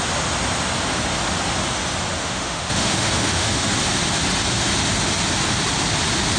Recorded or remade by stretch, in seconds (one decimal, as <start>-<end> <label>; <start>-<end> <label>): 0.0-2.2 recorded; 2.2-3.8 remade; 3.8-6.4 recorded